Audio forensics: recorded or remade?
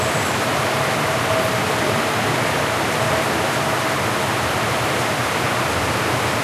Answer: remade